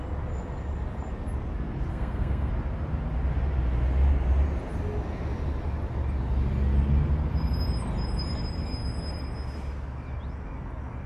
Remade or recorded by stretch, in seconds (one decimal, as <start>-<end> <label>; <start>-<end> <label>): 0.0-1.9 recorded; 1.9-2.5 remade; 2.5-11.1 recorded